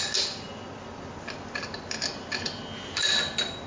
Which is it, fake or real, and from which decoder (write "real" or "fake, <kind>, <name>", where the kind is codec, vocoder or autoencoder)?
real